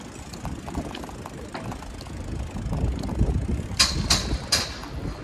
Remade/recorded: recorded